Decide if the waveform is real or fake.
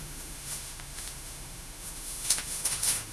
fake